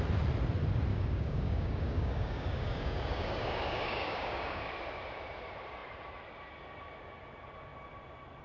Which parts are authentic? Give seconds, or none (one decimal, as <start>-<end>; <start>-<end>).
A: 0.0-0.9; 4.7-8.4